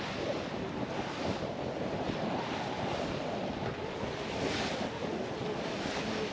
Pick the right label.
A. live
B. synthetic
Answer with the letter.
A